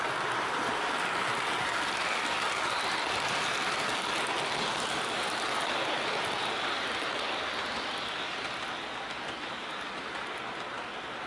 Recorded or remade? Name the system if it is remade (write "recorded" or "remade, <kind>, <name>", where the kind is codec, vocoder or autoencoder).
recorded